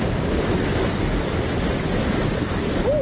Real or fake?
real